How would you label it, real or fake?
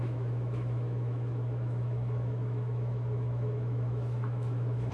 fake